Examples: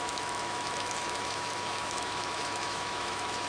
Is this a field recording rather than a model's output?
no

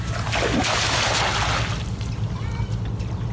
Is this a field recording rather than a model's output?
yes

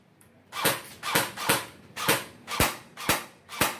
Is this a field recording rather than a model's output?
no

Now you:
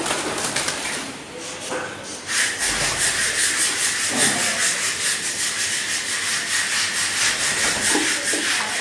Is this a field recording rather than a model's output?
yes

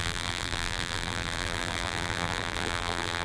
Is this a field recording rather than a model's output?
no